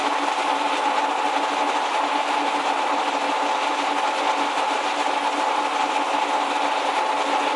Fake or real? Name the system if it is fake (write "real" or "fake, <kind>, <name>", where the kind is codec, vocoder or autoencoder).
real